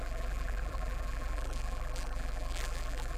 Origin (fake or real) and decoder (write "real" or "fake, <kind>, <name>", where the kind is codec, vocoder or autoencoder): fake, vocoder, BigVGAN v2